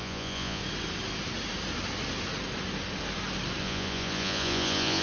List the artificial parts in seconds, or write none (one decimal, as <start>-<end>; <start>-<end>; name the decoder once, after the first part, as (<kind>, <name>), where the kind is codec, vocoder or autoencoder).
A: 0.0-0.6 (vocoder, Vocos); 3.6-5.0